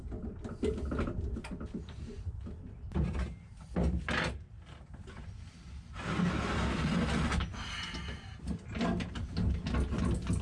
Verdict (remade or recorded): recorded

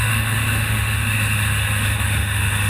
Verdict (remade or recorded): remade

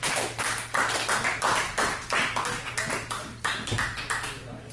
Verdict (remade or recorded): recorded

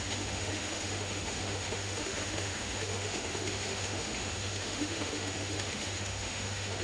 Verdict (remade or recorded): remade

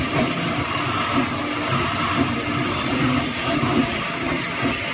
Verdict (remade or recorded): recorded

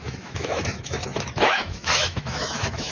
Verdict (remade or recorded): remade